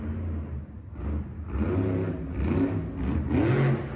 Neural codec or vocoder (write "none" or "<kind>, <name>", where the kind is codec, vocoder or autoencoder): none